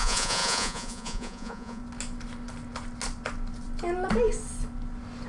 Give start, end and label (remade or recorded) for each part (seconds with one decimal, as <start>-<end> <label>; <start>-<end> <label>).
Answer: 0.0-1.8 remade; 1.8-5.3 recorded